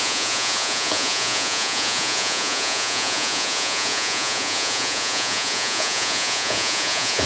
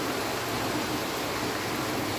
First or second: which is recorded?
second